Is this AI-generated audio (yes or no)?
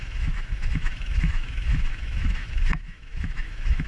yes